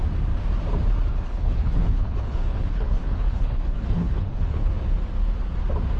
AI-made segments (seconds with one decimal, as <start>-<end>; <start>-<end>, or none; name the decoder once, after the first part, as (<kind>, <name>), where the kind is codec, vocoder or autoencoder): 1.1-4.7 (codec, HILCodec)